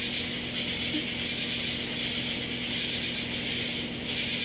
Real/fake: real